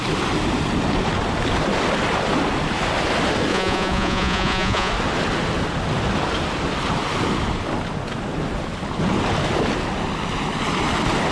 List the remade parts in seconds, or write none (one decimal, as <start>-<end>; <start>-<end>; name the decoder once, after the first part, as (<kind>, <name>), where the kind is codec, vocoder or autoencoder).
3.5-4.9 (vocoder, Vocos)